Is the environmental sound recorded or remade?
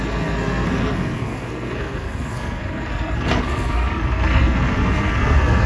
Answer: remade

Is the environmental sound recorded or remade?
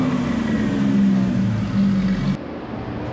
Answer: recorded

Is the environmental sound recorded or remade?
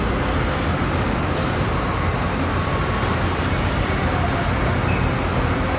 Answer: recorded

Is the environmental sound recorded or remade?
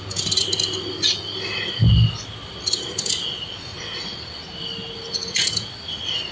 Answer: recorded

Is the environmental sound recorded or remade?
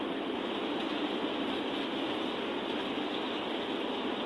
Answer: remade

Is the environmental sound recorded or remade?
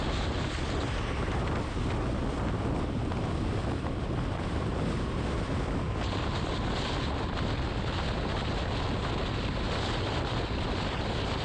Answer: recorded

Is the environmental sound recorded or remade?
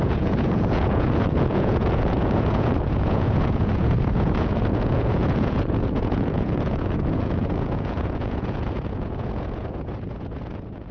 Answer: remade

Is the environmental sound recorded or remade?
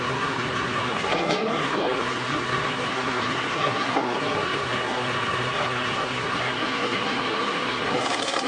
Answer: remade